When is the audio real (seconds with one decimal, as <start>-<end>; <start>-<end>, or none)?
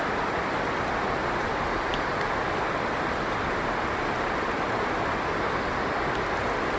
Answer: 0.0-6.8